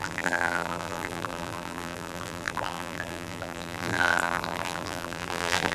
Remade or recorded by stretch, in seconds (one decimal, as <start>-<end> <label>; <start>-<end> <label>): 0.0-5.7 remade

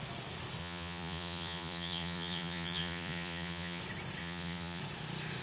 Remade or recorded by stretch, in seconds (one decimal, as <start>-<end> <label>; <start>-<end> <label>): 0.0-0.6 recorded; 0.6-3.8 remade; 3.8-4.2 recorded; 4.2-4.8 remade; 4.8-5.4 recorded